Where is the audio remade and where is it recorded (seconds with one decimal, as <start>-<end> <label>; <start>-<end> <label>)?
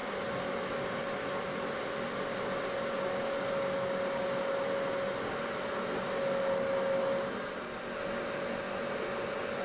0.0-9.6 recorded